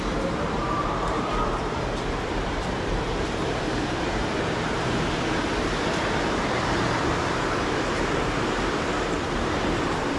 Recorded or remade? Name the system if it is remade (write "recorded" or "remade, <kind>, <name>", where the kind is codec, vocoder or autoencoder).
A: remade, vocoder, BigVGAN v2